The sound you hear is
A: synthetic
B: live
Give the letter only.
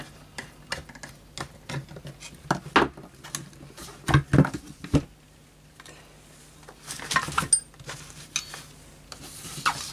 B